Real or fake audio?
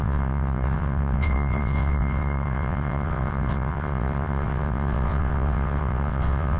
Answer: fake